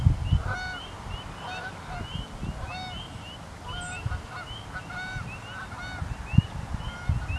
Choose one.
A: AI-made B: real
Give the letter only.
B